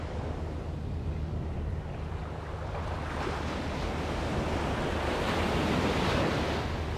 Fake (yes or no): no